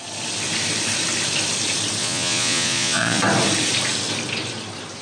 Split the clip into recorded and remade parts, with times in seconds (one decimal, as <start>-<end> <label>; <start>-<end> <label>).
0.0-2.0 recorded; 2.0-3.2 remade; 3.2-5.0 recorded